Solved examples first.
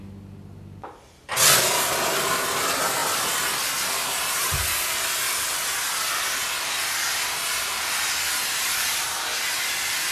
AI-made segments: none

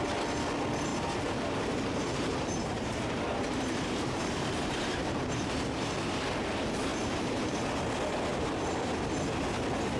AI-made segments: 0.9-5.9 (vocoder, BigVGAN v2); 6.9-7.6; 8.3-8.9

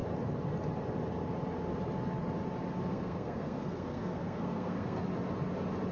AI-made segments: 2.9-5.0 (codec, SNAC)

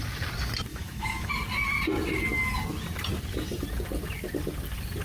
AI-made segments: 0.7-1.3 (autoencoder, DAC-VAE)

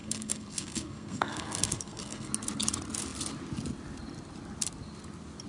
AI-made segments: 0.0-2.3 (codec, SNAC)

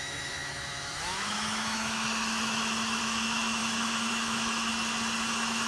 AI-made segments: 0.0-4.7 (autoencoder, DAC-VAE); 5.3-5.7

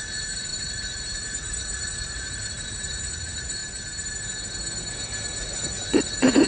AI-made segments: 0.0-3.6 (vocoder, Vocos); 5.4-6.5